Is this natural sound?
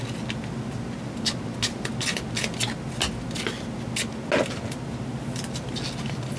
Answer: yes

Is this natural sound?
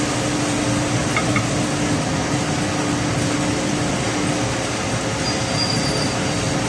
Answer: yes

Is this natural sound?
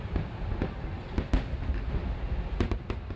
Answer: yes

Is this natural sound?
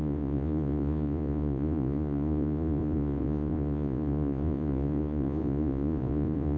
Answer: no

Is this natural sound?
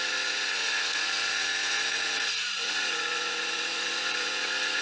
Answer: no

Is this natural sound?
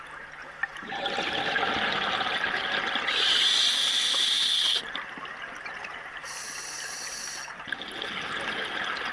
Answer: yes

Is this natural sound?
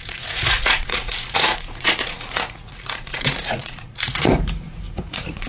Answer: no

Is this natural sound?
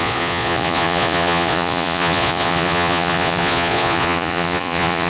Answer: no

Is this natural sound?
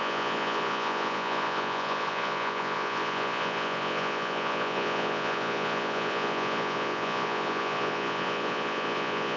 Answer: no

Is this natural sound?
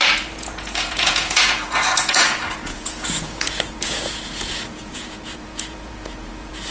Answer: no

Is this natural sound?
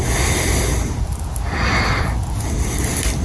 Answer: yes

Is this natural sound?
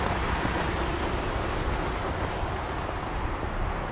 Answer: yes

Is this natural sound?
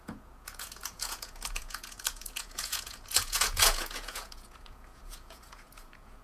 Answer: no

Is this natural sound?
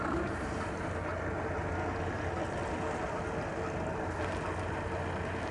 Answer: yes